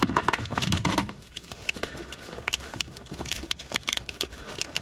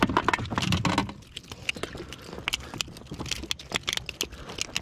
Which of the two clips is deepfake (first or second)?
first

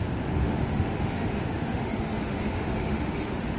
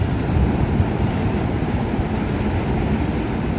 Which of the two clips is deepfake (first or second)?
first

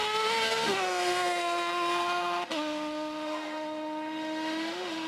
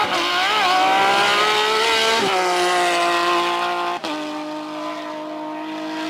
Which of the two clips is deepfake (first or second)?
first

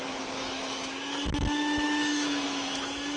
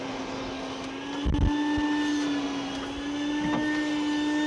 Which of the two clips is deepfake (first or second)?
first